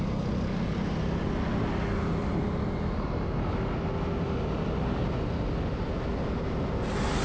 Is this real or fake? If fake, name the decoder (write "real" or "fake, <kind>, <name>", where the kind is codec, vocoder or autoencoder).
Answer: real